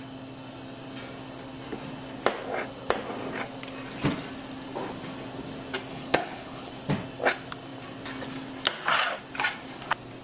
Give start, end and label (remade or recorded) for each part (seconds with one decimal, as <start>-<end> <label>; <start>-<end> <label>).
0.0-5.9 recorded; 5.9-6.7 remade; 6.7-10.2 recorded